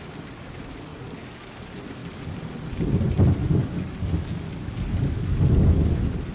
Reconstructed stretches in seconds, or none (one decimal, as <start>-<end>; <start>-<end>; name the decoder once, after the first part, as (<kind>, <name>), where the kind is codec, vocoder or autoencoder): 0.9-1.5 (codec, DAC); 2.0-2.5; 3.4-5.5